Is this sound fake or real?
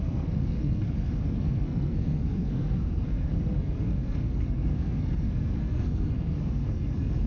fake